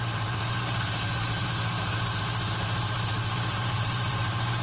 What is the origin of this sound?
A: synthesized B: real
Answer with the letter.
A